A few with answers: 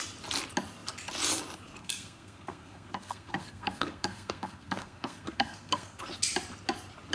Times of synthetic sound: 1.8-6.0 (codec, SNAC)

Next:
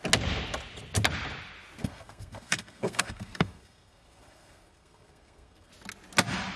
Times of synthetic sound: 1.8-5.7 (codec, SNAC)

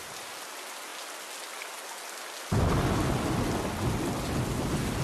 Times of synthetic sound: none

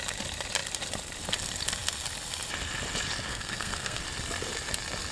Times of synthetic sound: 3.3-4.0 (codec, SNAC)

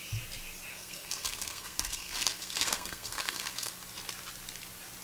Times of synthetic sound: 0.7-3.7 (codec, SNAC)

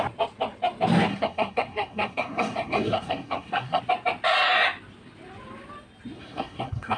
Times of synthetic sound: 1.1-3.8 (codec, SNAC); 6.2-7.0

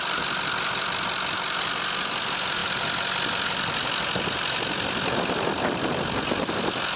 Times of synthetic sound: none

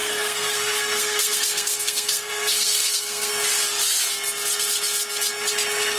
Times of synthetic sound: 0.0-3.3 (codec, SNAC)